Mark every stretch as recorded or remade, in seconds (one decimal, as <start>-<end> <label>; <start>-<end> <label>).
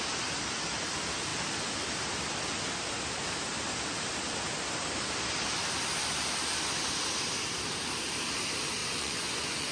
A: 0.0-8.8 recorded; 8.8-9.7 remade